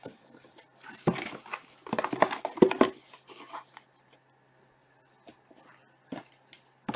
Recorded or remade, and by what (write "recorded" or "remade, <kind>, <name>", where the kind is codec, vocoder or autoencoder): recorded